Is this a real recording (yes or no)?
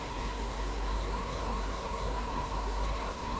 no